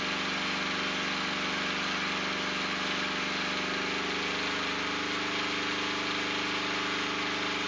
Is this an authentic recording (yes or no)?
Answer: yes